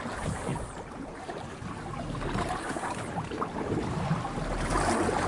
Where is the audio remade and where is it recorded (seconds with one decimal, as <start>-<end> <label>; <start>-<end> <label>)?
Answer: 0.0-5.3 remade